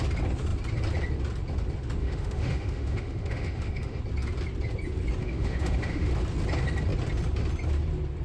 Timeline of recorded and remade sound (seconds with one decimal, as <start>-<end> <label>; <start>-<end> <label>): 0.0-2.0 recorded; 2.0-4.0 remade; 4.0-5.2 recorded; 5.2-6.1 remade; 6.1-8.2 recorded